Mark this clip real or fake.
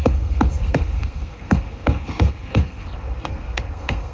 fake